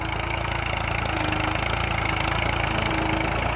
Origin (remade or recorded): recorded